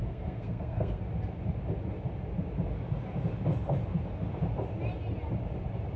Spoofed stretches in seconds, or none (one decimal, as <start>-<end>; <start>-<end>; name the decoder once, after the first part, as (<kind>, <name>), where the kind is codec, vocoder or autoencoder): 0.0-1.0 (codec, SNAC)